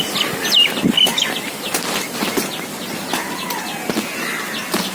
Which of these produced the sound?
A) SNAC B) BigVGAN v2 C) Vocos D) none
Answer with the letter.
D